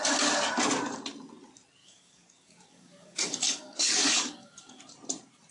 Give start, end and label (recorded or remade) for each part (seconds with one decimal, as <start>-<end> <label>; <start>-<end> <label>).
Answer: 0.0-1.8 recorded; 1.8-4.8 remade; 4.8-5.5 recorded